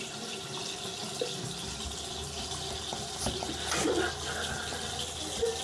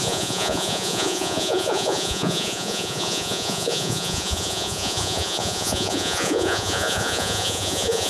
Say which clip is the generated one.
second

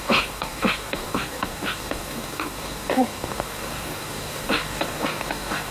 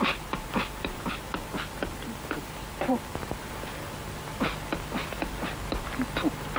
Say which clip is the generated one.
first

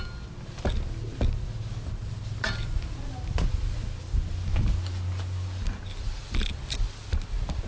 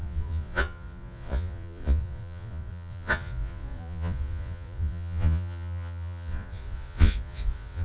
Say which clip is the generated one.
second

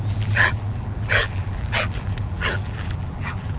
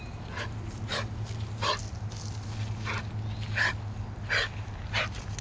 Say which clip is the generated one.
first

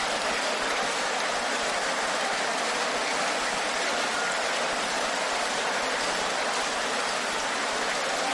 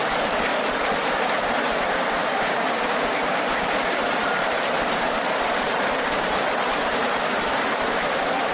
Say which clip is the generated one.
second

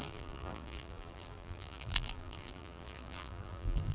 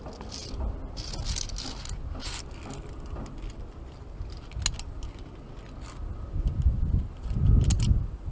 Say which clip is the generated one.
first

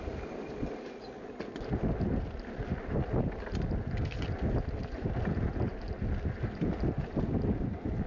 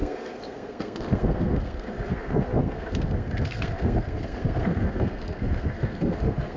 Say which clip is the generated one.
second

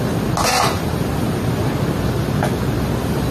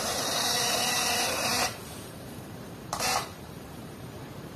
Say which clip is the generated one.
second